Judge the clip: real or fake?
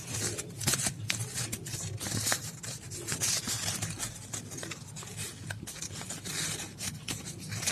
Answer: real